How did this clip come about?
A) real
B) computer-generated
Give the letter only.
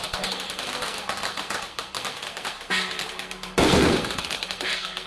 B